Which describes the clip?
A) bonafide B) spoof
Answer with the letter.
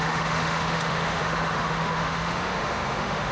B